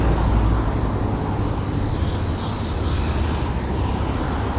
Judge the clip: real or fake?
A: real